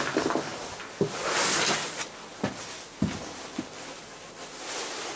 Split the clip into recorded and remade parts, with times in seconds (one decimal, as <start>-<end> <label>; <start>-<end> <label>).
0.0-5.2 recorded